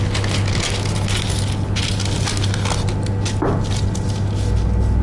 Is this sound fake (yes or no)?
no